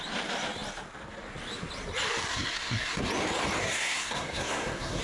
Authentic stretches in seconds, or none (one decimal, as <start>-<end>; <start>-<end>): 0.0-2.3; 3.1-3.6